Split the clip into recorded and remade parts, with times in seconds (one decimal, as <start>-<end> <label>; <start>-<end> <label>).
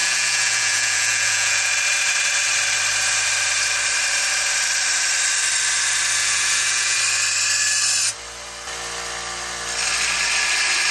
0.0-1.7 remade; 1.7-6.2 recorded; 6.2-7.0 remade; 7.0-10.9 recorded